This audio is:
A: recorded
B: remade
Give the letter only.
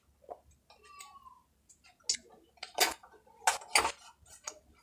A